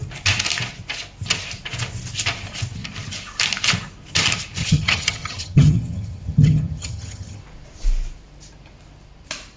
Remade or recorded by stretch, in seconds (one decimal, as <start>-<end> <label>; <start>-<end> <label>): 0.0-4.6 recorded; 4.6-7.4 remade; 7.4-9.6 recorded